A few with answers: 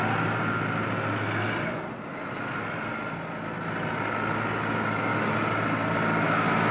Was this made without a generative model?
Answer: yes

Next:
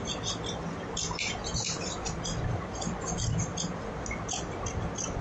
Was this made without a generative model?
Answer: yes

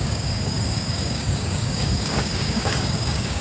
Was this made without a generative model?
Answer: no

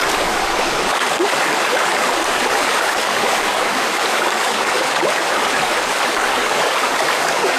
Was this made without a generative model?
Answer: no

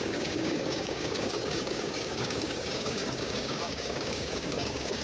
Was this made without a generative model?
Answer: no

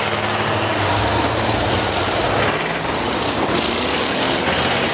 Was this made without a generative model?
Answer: yes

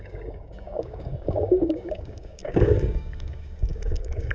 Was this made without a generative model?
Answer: no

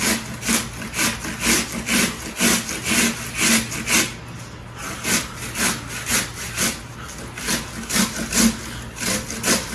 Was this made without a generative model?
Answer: yes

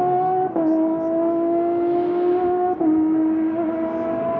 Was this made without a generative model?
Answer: yes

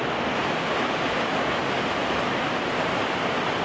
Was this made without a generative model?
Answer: yes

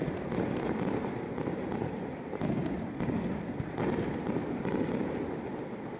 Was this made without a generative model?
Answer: yes